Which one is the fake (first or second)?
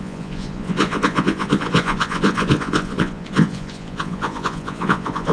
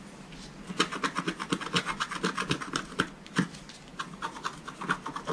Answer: first